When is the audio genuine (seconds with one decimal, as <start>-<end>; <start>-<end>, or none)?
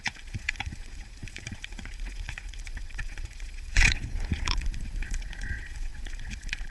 none